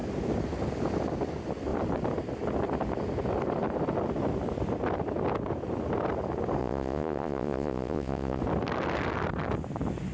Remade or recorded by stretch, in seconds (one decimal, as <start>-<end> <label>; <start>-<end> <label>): 0.0-6.6 recorded; 6.6-8.4 remade; 8.4-10.1 recorded